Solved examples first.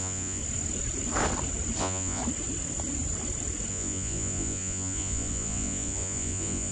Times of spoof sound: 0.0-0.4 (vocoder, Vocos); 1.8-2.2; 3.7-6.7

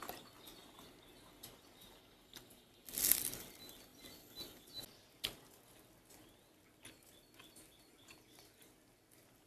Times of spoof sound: none

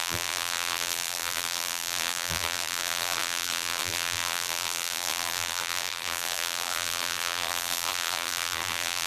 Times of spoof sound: 0.0-9.1 (vocoder, BigVGAN v2)

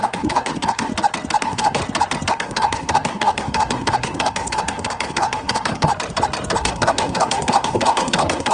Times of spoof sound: 0.0-0.9 (codec, SNAC); 1.4-1.8; 2.3-5.9; 6.6-8.5

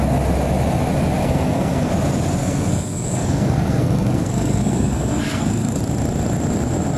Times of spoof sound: 1.2-1.9 (codec, SNAC); 2.4-5.8

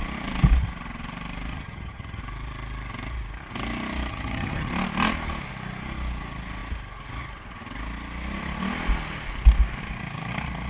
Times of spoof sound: 1.5-2.2 (vocoder, HiFi-GAN); 4.1-4.7